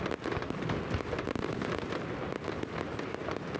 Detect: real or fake real